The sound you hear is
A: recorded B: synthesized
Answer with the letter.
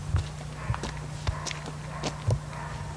A